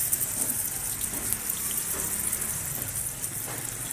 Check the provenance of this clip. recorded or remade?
recorded